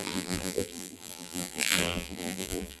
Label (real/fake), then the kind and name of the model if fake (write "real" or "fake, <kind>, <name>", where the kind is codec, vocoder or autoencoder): fake, vocoder, BigVGAN v2